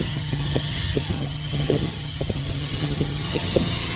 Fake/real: fake